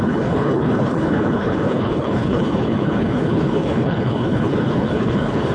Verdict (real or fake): fake